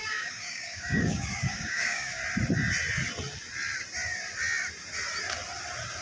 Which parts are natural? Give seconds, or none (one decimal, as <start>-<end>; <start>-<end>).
2.2-6.0